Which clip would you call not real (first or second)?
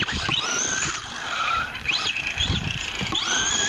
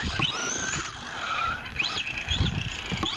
first